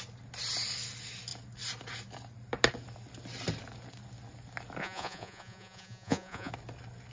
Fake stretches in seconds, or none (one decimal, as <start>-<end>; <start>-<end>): 4.8-6.5